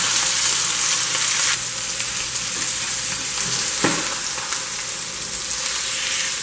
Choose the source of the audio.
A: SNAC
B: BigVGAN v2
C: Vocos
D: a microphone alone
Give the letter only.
D